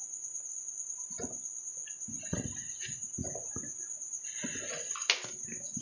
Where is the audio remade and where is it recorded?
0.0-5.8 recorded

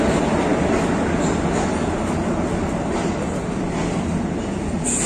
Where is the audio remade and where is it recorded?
0.0-5.1 recorded

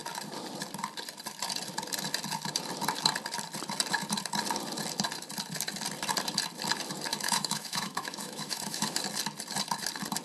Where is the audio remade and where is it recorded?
0.0-7.1 recorded; 7.1-9.0 remade; 9.0-10.2 recorded

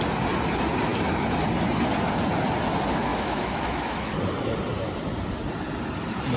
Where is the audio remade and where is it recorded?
0.0-3.1 recorded; 3.1-4.1 remade; 4.1-6.4 recorded

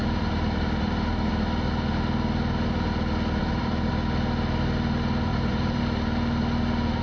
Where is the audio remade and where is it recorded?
0.0-1.3 remade; 1.3-3.4 recorded; 3.4-3.9 remade; 3.9-5.3 recorded; 5.3-5.8 remade; 5.8-7.0 recorded